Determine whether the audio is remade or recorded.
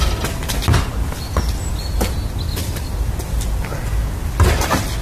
recorded